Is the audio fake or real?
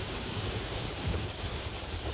fake